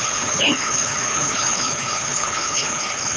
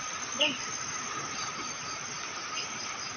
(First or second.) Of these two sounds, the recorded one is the second